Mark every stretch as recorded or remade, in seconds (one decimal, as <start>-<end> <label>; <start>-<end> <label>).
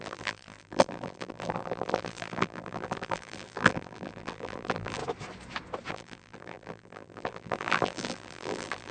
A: 0.0-5.0 remade; 5.0-5.9 recorded; 5.9-8.9 remade